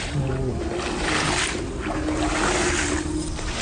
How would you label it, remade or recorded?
recorded